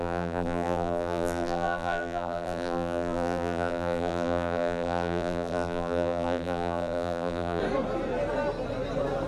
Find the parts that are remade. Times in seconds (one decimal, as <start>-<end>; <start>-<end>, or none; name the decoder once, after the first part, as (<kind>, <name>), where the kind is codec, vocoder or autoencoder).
0.0-7.6 (vocoder, BigVGAN v2)